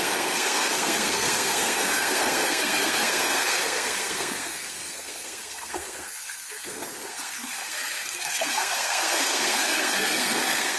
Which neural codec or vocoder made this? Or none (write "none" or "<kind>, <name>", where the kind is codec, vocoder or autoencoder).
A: codec, SNAC